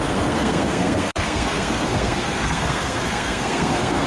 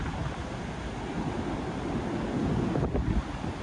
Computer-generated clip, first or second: first